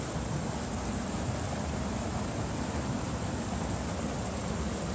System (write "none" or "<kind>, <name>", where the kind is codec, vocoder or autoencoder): none